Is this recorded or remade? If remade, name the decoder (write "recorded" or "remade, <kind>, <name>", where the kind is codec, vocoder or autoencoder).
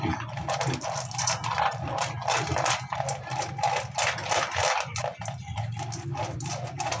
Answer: recorded